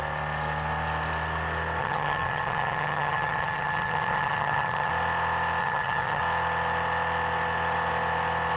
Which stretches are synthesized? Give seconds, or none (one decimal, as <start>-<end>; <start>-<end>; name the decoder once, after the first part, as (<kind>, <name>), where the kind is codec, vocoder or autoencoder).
1.8-4.9 (vocoder, HiFi-GAN); 5.6-6.2